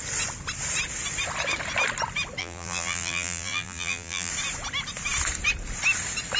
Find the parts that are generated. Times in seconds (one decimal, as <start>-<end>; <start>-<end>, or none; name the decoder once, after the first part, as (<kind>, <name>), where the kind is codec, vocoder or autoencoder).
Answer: 2.4-4.3 (vocoder, BigVGAN v2)